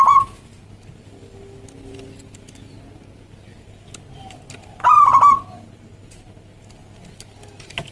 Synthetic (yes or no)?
no